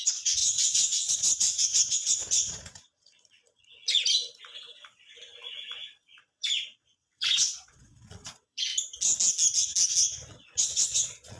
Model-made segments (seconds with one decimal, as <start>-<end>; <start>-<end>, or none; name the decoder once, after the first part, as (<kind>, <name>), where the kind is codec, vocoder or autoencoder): 0.0-4.0 (vocoder, Vocos); 6.2-8.7; 10.3-11.4